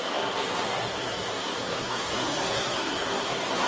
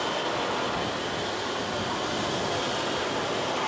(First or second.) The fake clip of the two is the first